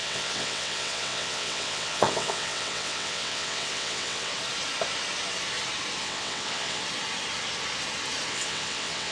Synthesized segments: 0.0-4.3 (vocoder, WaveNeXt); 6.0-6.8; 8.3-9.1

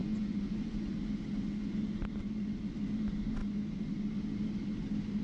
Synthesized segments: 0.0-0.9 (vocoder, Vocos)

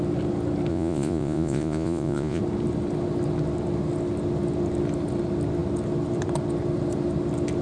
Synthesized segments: 0.7-2.4 (vocoder, Vocos)

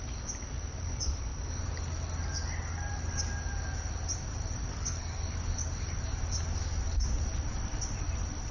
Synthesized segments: 4.7-5.2 (codec, SNAC)

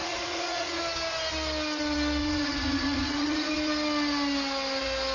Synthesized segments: 0.0-0.8 (vocoder, Vocos); 2.2-3.5